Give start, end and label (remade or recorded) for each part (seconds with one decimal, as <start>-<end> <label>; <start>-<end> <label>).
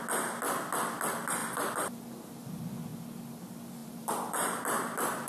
0.0-1.4 recorded; 1.4-1.9 remade; 1.9-3.8 recorded; 3.8-4.6 remade; 4.6-5.3 recorded